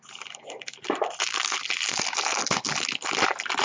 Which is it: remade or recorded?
recorded